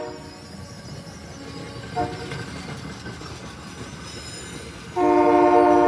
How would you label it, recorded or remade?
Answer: recorded